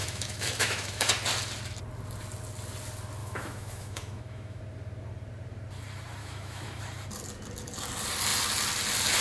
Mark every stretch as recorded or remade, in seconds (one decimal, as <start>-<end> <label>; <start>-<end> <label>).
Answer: 0.0-1.1 remade; 1.1-3.2 recorded; 3.2-4.6 remade; 4.6-6.2 recorded; 6.2-6.8 remade; 6.8-9.2 recorded

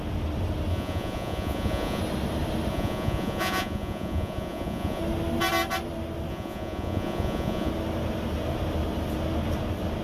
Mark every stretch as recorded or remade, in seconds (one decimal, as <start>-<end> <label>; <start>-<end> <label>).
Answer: 0.0-0.7 recorded; 0.7-2.0 remade; 2.0-2.7 recorded; 2.7-5.0 remade; 5.0-6.3 recorded; 6.3-7.7 remade; 7.7-10.0 recorded

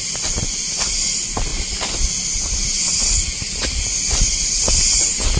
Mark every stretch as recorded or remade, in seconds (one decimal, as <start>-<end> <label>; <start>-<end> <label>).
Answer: 0.0-5.4 recorded